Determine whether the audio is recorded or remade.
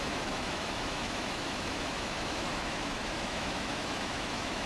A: remade